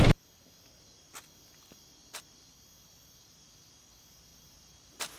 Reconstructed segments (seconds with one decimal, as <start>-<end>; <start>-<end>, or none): 4.3-5.2

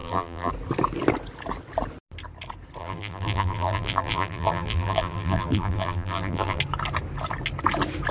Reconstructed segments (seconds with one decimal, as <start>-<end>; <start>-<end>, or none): 0.0-0.5; 2.8-6.6

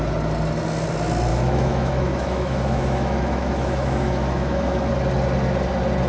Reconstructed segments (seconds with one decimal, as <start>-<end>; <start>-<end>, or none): 1.3-4.9

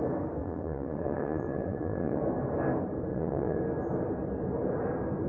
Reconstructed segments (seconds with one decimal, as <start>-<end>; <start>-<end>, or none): 0.4-2.2; 3.1-3.6

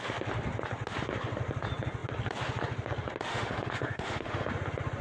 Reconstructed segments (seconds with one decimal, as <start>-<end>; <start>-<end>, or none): 3.3-4.5

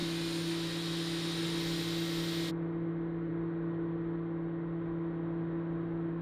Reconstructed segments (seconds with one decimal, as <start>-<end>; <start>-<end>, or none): none

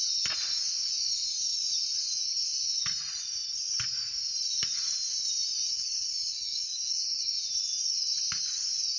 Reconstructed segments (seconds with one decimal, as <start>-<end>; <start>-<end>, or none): 5.7-7.3